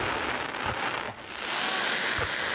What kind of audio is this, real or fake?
real